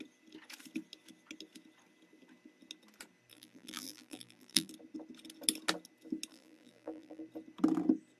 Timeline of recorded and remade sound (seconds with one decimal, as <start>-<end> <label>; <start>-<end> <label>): 0.0-3.3 recorded; 3.3-4.7 remade; 4.7-6.3 recorded; 6.3-7.2 remade; 7.2-8.2 recorded

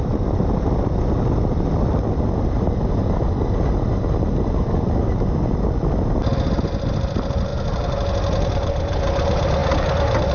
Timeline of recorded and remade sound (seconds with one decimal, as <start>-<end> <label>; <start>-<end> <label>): 0.0-7.5 recorded; 7.5-8.8 remade; 8.8-9.6 recorded; 9.6-10.3 remade

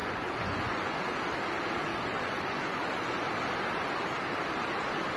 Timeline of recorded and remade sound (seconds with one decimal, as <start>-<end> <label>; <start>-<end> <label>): 0.0-1.0 remade; 1.0-1.9 recorded; 1.9-3.3 remade; 3.3-5.2 recorded

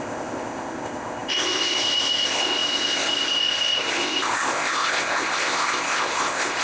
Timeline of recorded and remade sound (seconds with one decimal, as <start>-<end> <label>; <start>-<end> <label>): 0.0-6.6 remade

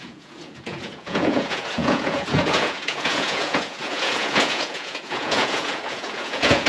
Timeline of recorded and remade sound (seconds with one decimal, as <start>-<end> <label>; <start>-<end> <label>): 0.0-6.7 remade

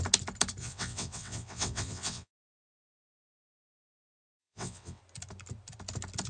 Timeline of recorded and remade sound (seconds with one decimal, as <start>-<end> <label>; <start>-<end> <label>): 0.0-0.6 recorded; 0.6-2.3 remade; 2.3-4.4 recorded; 4.4-5.0 remade; 5.0-6.3 recorded